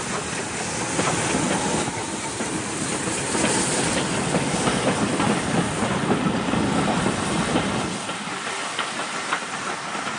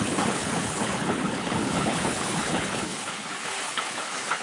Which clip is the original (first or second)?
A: first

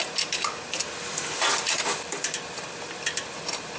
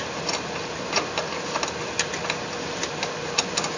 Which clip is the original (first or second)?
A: second